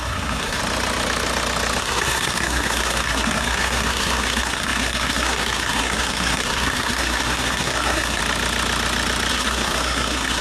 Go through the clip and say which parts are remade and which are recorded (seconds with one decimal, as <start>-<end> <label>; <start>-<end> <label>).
0.0-0.6 remade; 0.6-1.8 recorded; 1.8-8.2 remade; 8.2-9.3 recorded; 9.3-10.4 remade